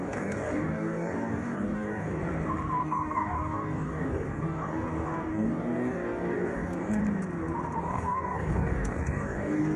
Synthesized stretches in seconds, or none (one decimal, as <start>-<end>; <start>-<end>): 0.0-2.2; 2.8-7.0; 7.8-9.8